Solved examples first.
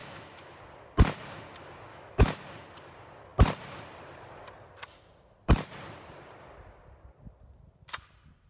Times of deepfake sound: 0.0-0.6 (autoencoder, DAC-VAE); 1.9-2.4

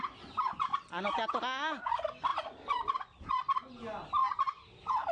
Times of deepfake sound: 0.7-1.4 (vocoder, BigVGAN v2); 2.3-3.3

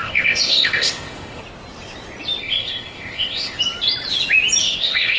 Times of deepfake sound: 0.0-1.4 (codec, ZipCodec); 2.4-3.6; 4.6-5.2

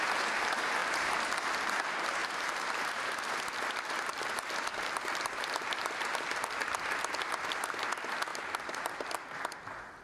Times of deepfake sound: 0.8-1.5 (vocoder, BigVGAN v2); 2.2-3.1; 4.1-6.4; 8.3-8.9

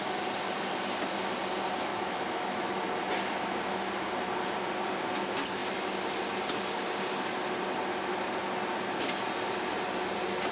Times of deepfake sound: 1.9-2.7 (autoencoder, DAC-VAE)

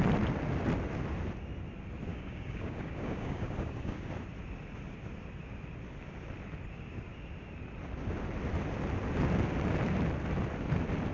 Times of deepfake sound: 2.1-4.1 (codec, DAC)

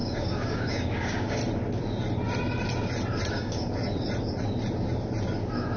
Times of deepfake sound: 0.0-1.4 (codec, DAC); 3.3-3.8

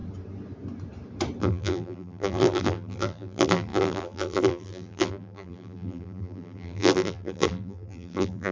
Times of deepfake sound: 1.4-8.5 (vocoder, BigVGAN v2)